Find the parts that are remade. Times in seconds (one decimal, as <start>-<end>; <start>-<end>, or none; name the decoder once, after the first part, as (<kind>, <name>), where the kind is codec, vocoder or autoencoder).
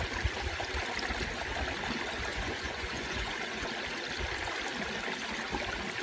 2.3-3.7 (vocoder, Vocos)